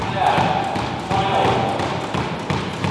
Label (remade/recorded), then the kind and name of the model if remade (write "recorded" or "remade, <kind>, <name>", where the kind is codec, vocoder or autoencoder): recorded